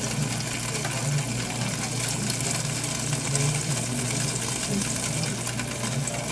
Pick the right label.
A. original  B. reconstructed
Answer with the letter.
A